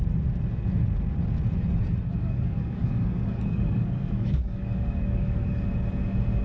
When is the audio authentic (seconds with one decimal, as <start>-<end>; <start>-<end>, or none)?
0.0-2.1; 5.6-6.4